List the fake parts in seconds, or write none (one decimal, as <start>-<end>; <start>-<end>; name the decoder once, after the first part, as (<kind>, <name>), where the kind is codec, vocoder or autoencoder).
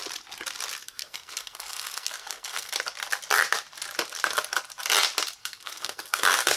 0.8-2.7 (codec, SNAC); 5.4-6.6